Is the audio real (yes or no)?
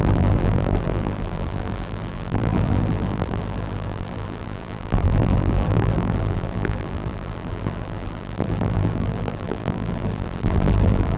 no